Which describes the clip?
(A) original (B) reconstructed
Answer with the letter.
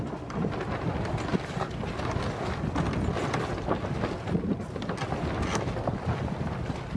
A